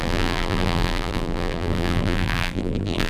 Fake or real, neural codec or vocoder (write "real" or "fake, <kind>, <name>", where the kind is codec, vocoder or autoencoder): fake, vocoder, BigVGAN v2